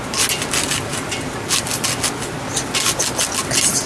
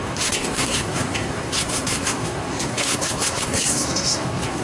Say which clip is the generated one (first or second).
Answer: second